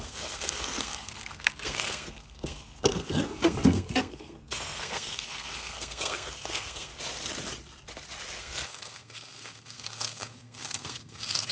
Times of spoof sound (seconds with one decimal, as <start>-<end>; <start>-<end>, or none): 0.0-6.9; 8.4-11.5